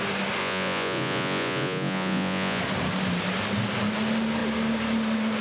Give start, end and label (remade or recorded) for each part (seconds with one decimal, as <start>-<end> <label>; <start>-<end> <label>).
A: 0.0-0.4 recorded; 0.4-2.6 remade; 2.6-5.4 recorded

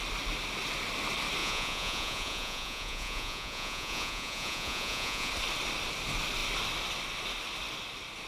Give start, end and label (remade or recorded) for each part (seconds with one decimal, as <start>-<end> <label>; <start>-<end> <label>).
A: 0.0-1.4 recorded; 1.4-5.3 remade; 5.3-8.3 recorded

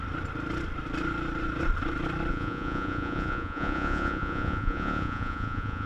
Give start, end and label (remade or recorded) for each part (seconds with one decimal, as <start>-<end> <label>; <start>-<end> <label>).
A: 0.0-2.3 recorded; 2.3-5.9 remade

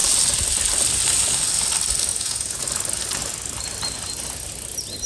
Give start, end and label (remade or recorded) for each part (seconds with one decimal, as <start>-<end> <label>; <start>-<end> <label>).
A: 0.0-2.1 recorded; 2.1-2.6 remade; 2.6-5.1 recorded

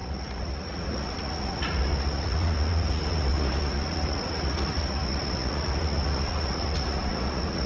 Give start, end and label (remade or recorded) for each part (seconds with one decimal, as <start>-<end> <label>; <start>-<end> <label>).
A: 0.0-7.7 remade

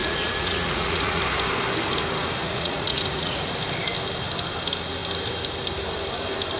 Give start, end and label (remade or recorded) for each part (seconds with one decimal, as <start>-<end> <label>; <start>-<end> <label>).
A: 0.0-1.2 remade; 1.2-2.4 recorded; 2.4-3.5 remade; 3.5-6.6 recorded

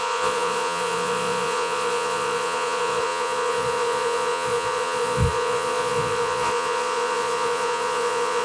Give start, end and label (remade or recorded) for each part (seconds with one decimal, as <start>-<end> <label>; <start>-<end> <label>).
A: 0.0-8.4 remade